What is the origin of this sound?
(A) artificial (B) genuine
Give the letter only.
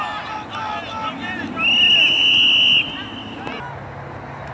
B